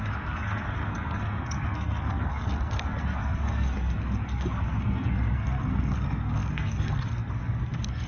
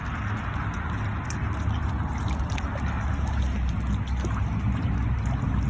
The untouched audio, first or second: second